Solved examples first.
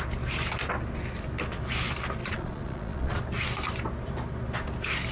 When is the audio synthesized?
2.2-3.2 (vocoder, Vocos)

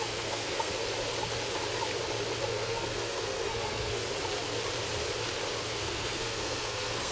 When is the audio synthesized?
0.0-0.7 (codec, SNAC); 2.4-4.0; 5.7-7.1

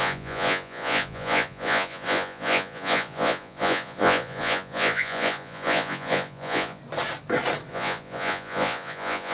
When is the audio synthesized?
0.0-6.8 (vocoder, Vocos); 7.7-9.3

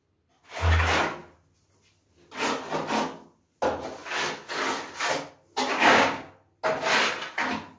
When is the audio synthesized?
5.7-6.3 (codec, DAC)

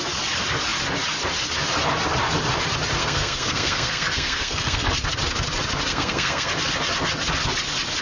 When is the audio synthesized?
3.0-4.9 (codec, SNAC); 5.9-6.5